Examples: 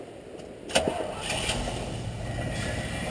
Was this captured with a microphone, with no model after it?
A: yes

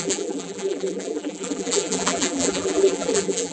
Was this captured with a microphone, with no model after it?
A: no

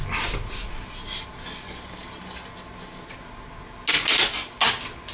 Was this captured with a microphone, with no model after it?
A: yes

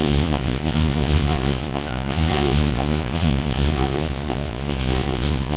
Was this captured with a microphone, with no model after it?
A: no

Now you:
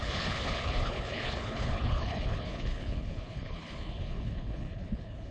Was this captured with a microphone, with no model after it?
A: no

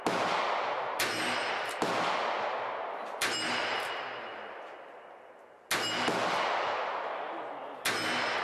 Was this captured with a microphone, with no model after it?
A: yes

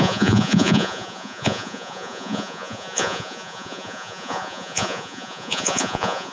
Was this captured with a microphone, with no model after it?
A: no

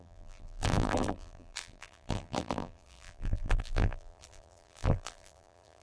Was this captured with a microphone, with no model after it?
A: no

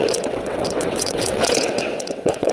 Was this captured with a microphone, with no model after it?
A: no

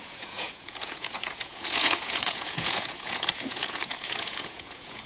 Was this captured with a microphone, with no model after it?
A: no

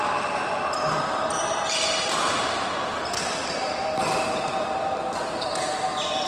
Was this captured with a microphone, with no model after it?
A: no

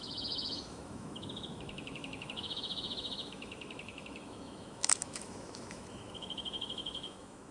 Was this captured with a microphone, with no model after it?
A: no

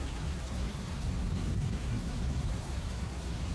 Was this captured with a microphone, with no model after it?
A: no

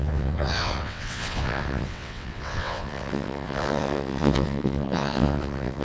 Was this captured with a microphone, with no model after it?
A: no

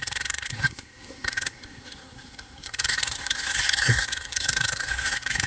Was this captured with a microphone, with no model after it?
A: no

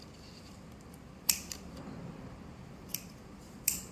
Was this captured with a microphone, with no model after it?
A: no